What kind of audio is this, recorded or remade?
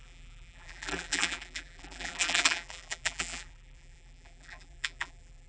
remade